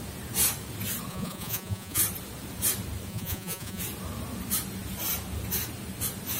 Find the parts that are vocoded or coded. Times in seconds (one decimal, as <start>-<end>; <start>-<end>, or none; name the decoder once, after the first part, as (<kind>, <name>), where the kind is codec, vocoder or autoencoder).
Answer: 1.1-2.0 (vocoder, Vocos); 3.1-3.8